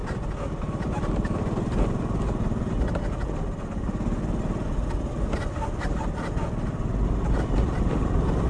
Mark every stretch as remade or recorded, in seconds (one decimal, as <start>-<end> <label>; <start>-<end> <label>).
0.0-8.5 recorded